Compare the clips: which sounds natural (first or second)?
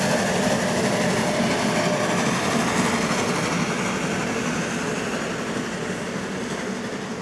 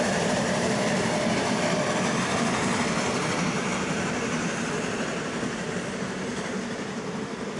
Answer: first